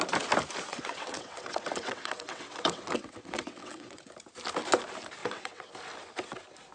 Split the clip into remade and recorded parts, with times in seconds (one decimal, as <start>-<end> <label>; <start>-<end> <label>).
0.0-0.7 recorded; 0.7-4.1 remade; 4.1-5.2 recorded; 5.2-5.7 remade; 5.7-6.7 recorded